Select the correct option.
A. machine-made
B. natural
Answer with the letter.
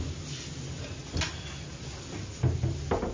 B